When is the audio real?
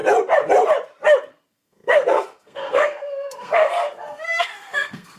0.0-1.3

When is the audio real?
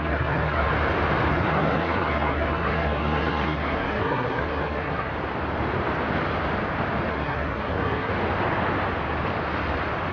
0.7-1.3; 5.1-7.1; 8.1-10.1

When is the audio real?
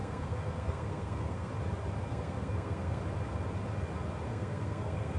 1.5-2.1; 3.0-4.3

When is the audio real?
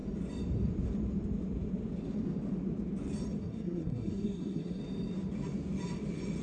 0.0-3.4; 4.8-6.4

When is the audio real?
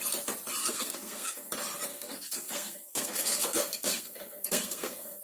0.0-0.6; 1.5-1.9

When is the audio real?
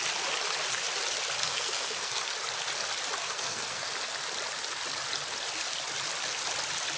0.0-1.4; 2.3-3.2; 3.9-7.0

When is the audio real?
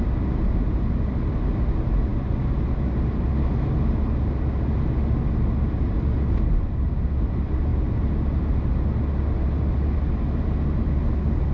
0.0-11.5